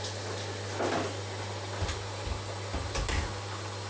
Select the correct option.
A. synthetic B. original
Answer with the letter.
B